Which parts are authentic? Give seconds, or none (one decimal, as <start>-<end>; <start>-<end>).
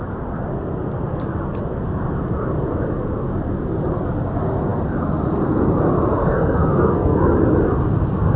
0.0-6.2; 7.2-8.4